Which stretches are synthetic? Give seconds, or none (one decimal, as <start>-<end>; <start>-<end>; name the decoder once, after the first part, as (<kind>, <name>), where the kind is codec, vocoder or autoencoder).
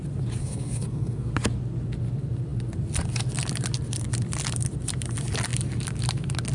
0.4-1.3 (codec, SNAC)